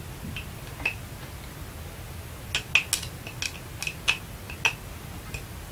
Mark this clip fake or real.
real